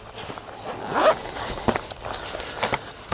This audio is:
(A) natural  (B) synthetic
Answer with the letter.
A